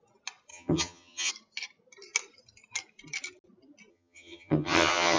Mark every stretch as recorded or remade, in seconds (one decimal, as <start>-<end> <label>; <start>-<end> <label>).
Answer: 0.0-0.5 recorded; 0.5-1.3 remade; 1.3-3.9 recorded; 3.9-5.2 remade